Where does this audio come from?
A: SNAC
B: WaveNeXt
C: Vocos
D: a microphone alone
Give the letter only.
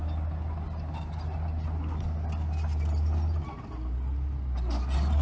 D